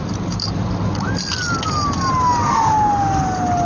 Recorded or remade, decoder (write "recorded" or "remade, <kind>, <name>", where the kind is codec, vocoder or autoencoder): recorded